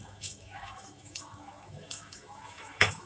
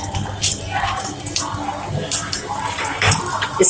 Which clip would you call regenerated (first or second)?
first